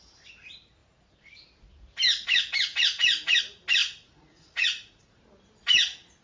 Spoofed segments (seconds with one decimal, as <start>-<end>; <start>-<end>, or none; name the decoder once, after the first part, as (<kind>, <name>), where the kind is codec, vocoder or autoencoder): 3.8-5.2 (vocoder, Vocos)